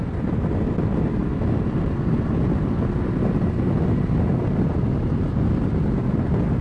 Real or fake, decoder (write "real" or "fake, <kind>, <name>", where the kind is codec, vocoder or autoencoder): real